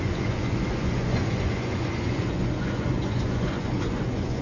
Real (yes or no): no